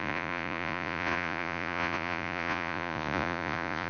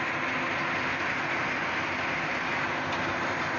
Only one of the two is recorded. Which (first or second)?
second